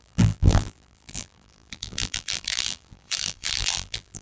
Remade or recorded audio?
remade